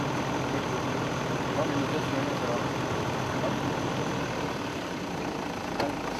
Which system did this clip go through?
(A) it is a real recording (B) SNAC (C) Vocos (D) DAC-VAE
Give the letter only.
A